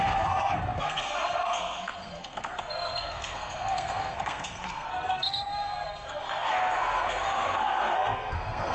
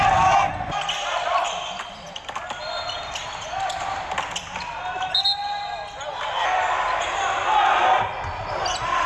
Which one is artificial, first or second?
first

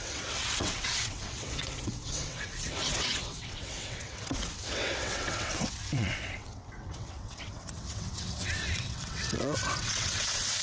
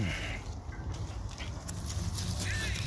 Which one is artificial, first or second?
first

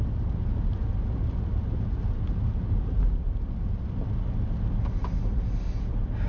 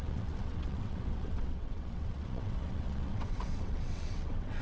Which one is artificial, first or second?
second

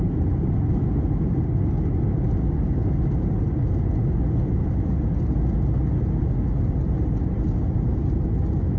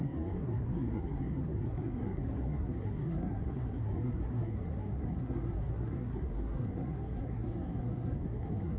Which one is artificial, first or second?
second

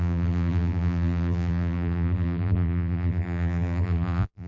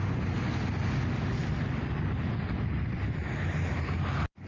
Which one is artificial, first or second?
first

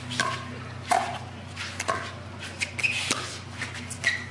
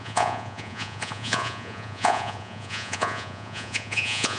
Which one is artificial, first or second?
second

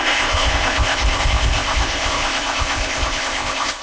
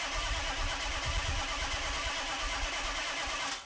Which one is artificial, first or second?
first